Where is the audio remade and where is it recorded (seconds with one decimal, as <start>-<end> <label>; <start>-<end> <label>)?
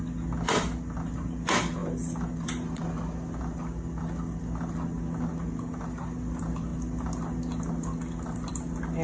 0.0-9.0 recorded